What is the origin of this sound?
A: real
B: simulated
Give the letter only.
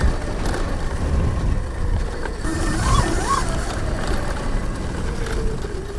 A